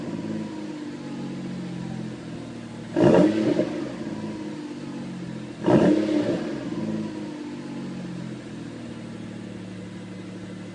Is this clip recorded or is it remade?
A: recorded